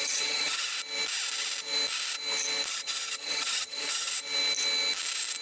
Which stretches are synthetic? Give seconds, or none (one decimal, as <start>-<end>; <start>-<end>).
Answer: 0.0-0.7; 2.7-4.1